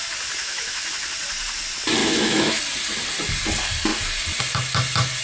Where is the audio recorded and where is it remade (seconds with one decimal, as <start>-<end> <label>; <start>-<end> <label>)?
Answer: 0.0-0.4 recorded; 0.4-0.9 remade; 0.9-2.0 recorded; 2.0-2.6 remade; 2.6-5.2 recorded